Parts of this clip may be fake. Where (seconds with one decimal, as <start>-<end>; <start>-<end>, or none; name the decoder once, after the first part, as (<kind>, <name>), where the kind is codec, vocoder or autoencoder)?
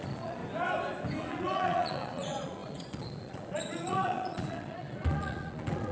0.0-0.4 (vocoder, Vocos); 1.2-5.9